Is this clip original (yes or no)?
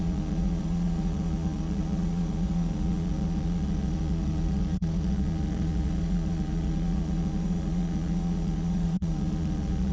no